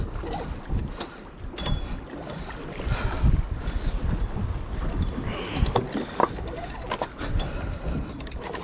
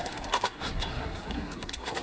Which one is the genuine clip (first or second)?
first